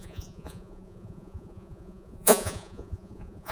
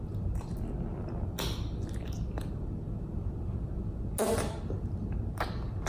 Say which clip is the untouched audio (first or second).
second